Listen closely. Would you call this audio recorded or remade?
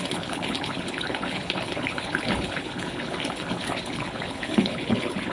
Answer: remade